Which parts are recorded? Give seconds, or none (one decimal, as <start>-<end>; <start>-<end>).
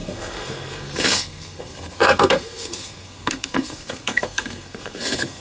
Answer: none